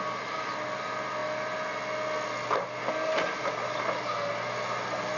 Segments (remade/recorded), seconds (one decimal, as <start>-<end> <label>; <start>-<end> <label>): 0.0-5.2 recorded